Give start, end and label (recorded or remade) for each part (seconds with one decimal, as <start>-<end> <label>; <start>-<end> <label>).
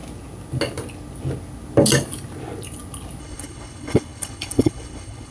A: 0.0-3.2 recorded; 3.2-5.3 remade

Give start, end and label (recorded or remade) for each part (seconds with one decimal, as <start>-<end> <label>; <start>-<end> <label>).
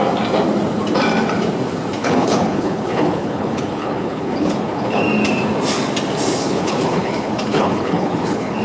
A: 0.0-2.0 recorded; 2.0-5.0 remade; 5.0-6.4 recorded; 6.4-8.6 remade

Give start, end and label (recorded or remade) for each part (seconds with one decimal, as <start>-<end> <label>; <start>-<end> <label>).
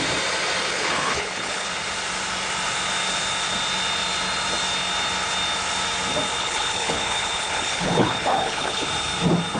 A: 0.0-0.6 recorded; 0.6-1.7 remade; 1.7-6.4 recorded; 6.4-8.9 remade; 8.9-9.6 recorded